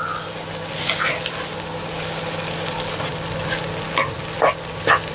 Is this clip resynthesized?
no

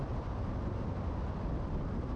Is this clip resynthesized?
no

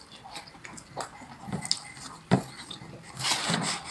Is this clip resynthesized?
no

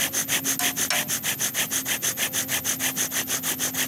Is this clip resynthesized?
no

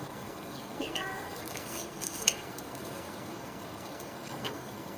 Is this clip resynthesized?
yes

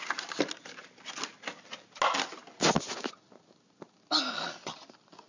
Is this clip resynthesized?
no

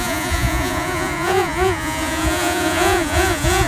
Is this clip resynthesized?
yes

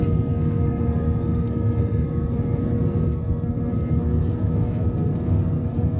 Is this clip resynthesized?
yes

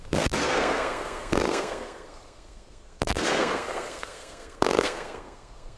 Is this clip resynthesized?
yes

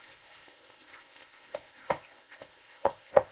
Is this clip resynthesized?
yes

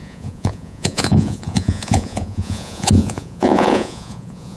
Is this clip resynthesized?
yes